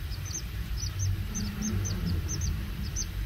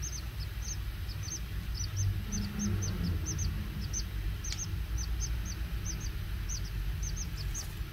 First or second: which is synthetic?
first